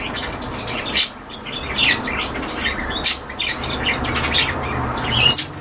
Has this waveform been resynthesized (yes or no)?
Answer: no